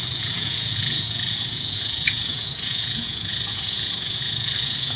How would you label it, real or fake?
fake